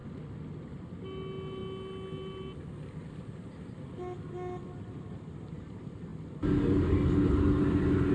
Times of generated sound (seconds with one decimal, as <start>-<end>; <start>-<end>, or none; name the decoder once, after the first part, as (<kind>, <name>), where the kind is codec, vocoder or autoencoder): none